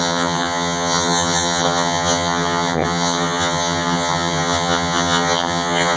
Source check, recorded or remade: remade